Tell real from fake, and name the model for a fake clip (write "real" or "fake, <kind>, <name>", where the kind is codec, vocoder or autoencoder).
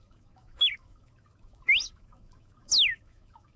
fake, autoencoder, DAC-VAE